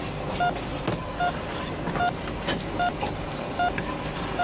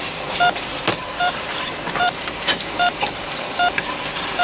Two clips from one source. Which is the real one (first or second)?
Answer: first